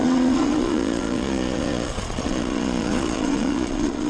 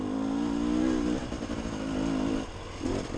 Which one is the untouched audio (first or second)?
second